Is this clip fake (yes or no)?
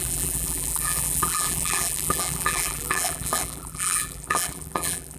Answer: yes